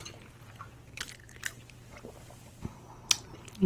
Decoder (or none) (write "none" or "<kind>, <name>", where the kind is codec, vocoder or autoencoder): vocoder, BigVGAN v2